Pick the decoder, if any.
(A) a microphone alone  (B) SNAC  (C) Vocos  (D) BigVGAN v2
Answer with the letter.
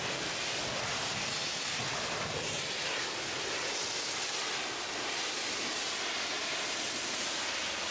A